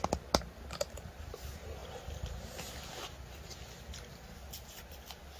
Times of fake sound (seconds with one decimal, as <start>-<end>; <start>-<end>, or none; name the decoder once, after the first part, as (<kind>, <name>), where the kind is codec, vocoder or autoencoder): none